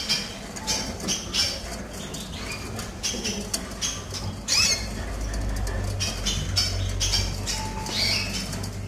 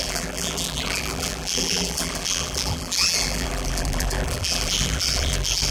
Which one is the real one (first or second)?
first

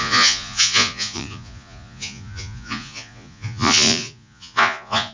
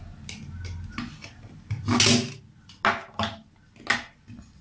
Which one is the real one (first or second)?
second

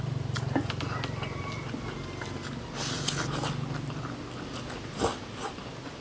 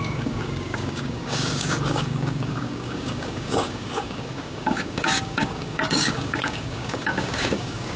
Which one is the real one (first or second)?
first